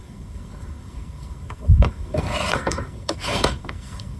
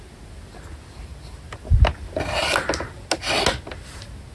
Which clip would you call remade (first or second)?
first